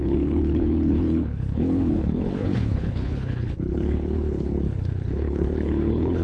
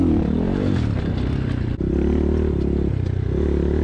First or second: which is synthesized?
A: first